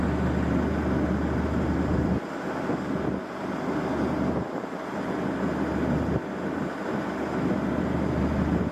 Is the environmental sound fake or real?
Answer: real